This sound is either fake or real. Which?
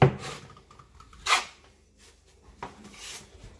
real